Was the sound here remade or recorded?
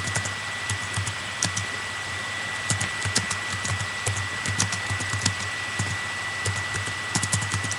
recorded